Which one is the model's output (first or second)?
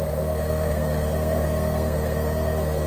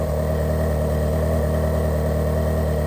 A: first